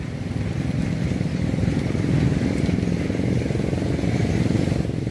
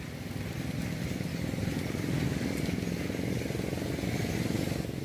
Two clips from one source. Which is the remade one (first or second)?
first